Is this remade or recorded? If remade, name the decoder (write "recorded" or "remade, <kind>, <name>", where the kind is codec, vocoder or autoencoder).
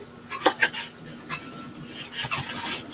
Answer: recorded